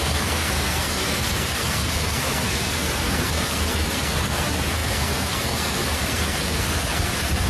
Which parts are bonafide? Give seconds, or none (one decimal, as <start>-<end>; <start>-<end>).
none